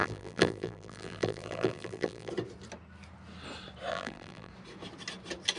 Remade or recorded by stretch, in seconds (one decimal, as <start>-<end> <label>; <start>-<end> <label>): 0.0-2.3 remade; 2.3-3.9 recorded; 3.9-4.5 remade; 4.5-5.6 recorded